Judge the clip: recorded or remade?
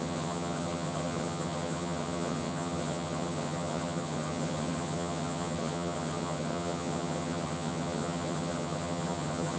remade